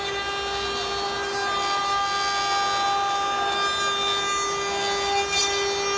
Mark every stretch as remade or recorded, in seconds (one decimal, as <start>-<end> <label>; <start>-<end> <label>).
0.0-6.0 recorded